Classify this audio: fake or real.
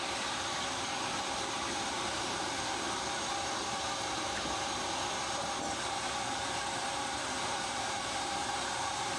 fake